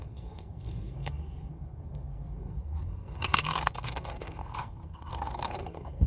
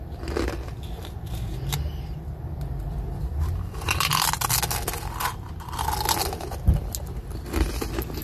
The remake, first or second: first